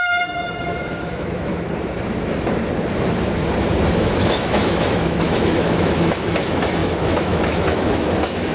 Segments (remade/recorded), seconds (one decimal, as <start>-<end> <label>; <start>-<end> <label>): 0.0-1.5 remade; 1.5-3.9 recorded; 3.9-8.5 remade